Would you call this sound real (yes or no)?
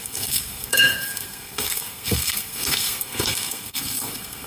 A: no